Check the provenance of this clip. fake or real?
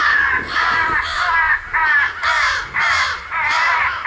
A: real